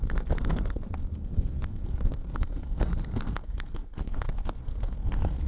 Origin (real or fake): fake